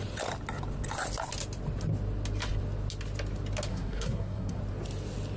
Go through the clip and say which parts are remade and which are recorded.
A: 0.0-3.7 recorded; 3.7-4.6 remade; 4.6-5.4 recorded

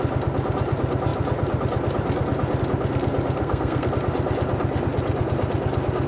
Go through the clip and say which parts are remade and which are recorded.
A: 0.0-3.4 recorded; 3.4-3.9 remade; 3.9-6.1 recorded

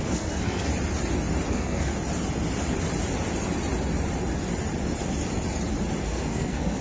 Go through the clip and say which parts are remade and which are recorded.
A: 0.0-0.7 remade; 0.7-1.5 recorded; 1.5-1.9 remade; 1.9-6.0 recorded; 6.0-6.8 remade

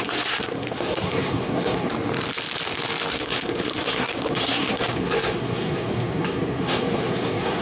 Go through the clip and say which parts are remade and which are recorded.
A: 0.0-1.9 remade; 1.9-3.1 recorded; 3.1-7.6 remade

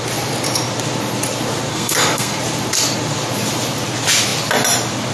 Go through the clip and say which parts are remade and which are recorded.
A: 0.0-1.7 recorded; 1.7-2.4 remade; 2.4-5.1 recorded